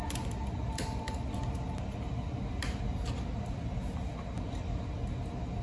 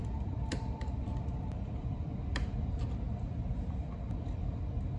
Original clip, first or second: first